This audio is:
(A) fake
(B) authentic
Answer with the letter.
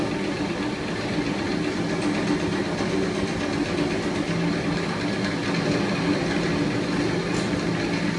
B